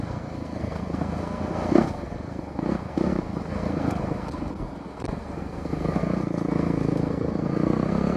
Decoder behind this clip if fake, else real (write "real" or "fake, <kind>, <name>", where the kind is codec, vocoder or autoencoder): fake, codec, SNAC